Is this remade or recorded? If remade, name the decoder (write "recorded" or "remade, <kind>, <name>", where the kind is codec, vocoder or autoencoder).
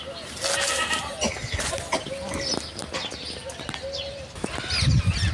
recorded